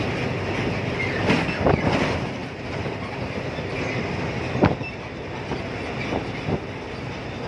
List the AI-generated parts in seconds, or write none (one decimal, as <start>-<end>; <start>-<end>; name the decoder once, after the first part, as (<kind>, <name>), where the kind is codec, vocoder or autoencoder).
2.4-5.6 (vocoder, BigVGAN v2)